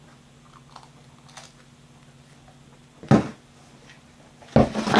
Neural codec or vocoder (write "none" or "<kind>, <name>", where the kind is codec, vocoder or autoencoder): none